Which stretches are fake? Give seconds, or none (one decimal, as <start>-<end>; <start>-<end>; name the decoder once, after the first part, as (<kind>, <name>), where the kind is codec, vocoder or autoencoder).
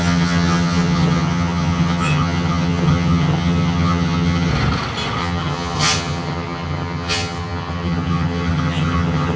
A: 0.0-4.5 (vocoder, HiFi-GAN); 5.2-9.4